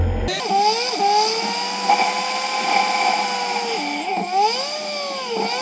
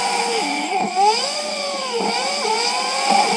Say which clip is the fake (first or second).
second